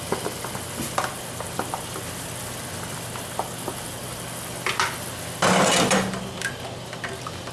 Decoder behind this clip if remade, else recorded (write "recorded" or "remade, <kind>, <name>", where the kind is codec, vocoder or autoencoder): recorded